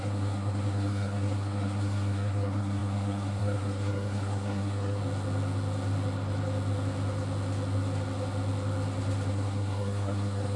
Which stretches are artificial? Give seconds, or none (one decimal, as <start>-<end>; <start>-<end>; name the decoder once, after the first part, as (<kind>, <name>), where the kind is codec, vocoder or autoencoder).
0.0-5.0 (codec, SNAC); 9.3-10.6